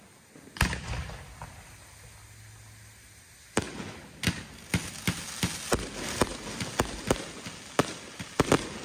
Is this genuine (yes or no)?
yes